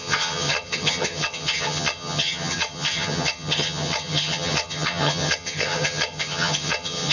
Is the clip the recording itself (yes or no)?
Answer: no